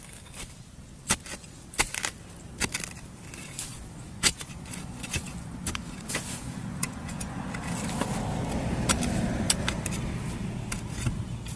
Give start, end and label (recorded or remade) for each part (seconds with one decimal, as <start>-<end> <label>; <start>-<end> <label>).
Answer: 0.0-3.7 recorded; 3.7-7.4 remade; 7.4-11.6 recorded